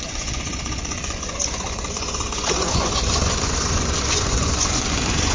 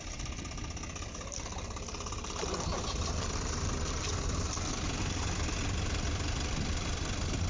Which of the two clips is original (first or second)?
second